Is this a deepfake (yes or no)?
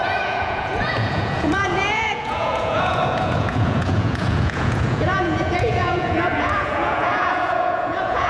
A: yes